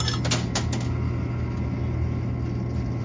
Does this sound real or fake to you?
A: real